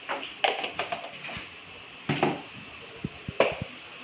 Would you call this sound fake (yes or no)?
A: no